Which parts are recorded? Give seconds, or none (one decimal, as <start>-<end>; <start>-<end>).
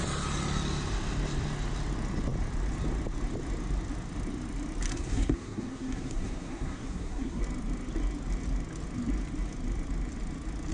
0.0-4.9; 7.4-10.7